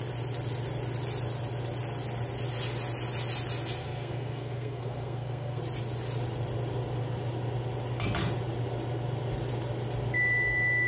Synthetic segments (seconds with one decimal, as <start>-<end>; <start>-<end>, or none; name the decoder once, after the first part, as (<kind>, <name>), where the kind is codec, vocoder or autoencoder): 3.8-5.6 (codec, SNAC)